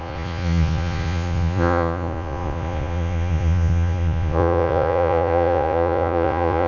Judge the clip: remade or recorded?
remade